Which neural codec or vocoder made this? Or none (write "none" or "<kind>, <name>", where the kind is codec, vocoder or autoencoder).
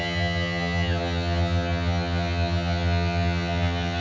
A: vocoder, HiFi-GAN